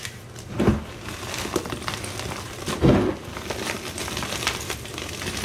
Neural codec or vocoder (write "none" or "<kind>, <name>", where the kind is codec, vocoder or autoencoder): none